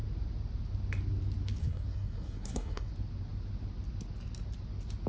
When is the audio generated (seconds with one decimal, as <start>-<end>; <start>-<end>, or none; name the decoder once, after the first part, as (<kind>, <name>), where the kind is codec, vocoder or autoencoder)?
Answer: 1.6-2.9 (codec, SNAC)